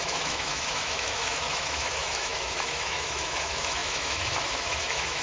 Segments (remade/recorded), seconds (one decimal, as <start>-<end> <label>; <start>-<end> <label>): 0.0-5.2 remade